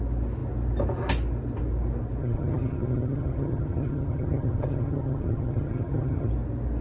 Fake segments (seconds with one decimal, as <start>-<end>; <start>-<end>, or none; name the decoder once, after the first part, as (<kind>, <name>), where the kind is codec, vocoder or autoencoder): 2.2-6.3 (vocoder, HiFi-GAN)